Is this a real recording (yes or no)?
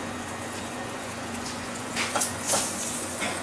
no